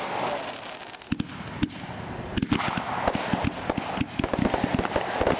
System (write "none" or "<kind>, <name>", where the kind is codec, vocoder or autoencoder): none